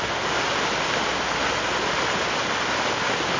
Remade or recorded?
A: recorded